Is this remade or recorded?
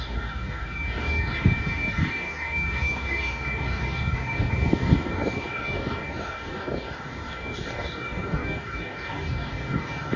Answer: remade